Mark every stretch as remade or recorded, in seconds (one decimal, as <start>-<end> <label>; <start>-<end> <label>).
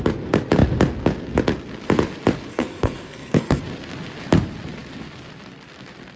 0.0-2.5 recorded; 2.5-3.6 remade; 3.6-6.2 recorded